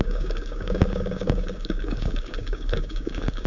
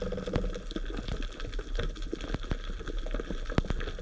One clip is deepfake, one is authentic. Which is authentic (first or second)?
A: second